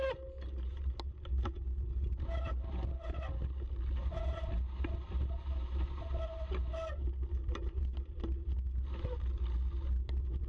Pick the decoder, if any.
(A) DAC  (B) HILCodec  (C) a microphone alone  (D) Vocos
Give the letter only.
C